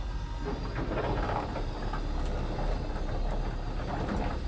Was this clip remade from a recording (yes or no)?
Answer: no